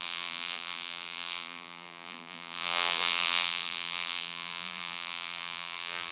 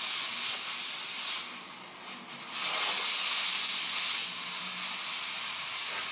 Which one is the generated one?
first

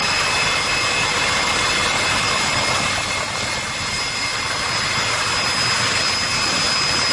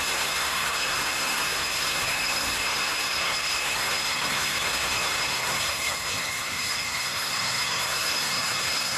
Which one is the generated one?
second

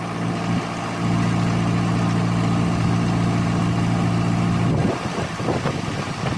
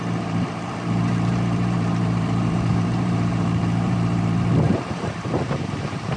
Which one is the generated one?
second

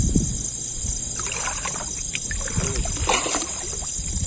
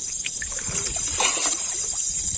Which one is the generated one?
second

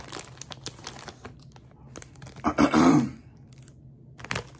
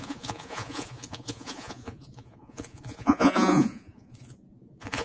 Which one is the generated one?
second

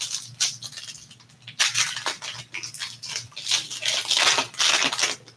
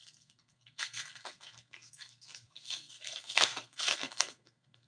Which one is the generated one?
second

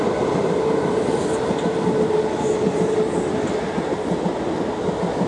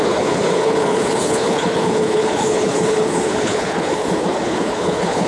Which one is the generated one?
second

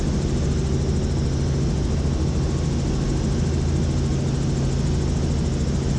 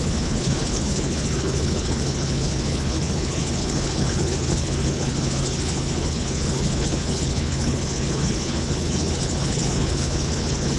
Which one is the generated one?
second